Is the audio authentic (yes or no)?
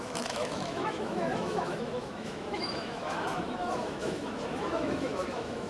no